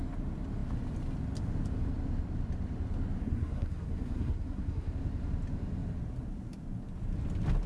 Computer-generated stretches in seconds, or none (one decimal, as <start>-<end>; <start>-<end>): 3.2-4.9